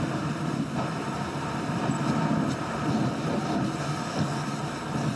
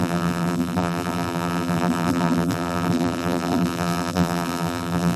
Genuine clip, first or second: first